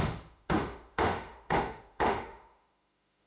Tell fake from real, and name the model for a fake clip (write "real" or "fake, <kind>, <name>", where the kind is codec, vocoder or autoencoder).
fake, autoencoder, DAC-VAE